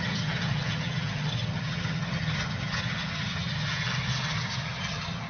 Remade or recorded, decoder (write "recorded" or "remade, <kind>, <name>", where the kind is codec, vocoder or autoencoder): remade, vocoder, HiFi-GAN